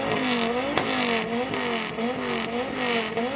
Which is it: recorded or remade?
recorded